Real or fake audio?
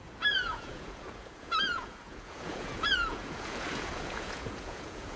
fake